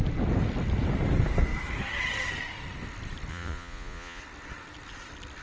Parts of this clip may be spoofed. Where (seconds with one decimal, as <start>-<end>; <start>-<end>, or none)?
3.3-4.2